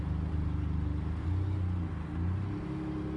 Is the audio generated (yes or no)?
no